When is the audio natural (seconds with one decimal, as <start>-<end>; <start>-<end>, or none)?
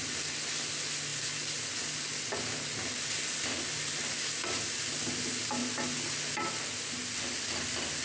0.0-8.0